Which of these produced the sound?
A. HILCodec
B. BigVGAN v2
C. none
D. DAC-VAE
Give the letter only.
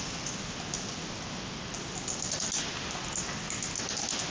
C